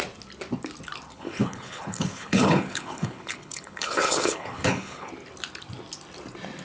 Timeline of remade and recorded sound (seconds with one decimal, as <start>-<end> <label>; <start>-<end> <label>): 0.0-1.1 recorded; 1.1-5.1 remade; 5.1-6.6 recorded